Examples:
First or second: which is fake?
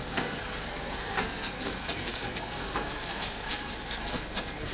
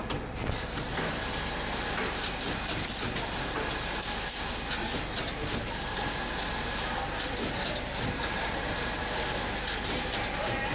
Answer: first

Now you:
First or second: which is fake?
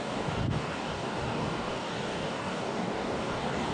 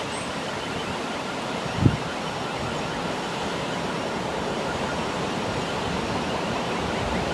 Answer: first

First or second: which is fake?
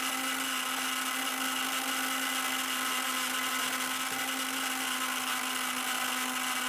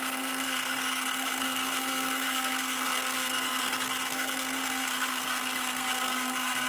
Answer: second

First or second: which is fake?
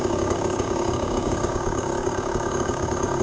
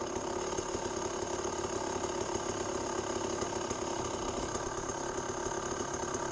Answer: first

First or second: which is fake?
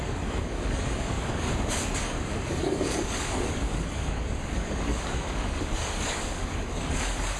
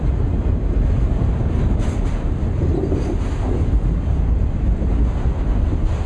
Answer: first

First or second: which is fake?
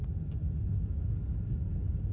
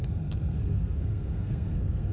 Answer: second